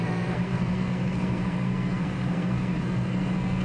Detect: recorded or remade remade